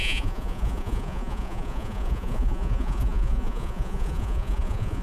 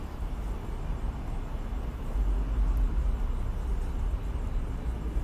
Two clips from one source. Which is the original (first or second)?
second